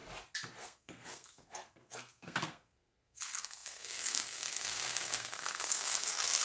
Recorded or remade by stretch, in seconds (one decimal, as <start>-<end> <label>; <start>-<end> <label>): 0.0-0.6 recorded; 0.6-6.4 remade